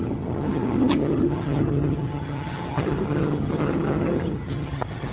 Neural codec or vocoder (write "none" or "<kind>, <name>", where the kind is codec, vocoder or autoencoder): vocoder, HiFi-GAN